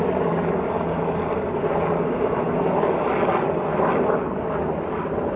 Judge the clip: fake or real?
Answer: real